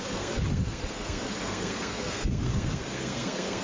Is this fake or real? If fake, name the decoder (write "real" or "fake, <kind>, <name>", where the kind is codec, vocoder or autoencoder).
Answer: fake, codec, SNAC